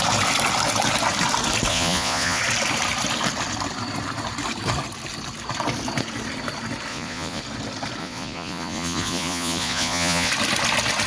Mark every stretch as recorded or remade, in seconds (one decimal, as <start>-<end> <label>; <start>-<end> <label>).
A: 0.0-1.7 recorded; 1.7-2.4 remade; 2.4-6.9 recorded; 6.9-7.4 remade; 7.4-8.0 recorded; 8.0-10.3 remade; 10.3-11.1 recorded